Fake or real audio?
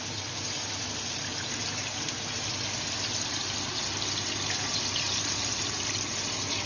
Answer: real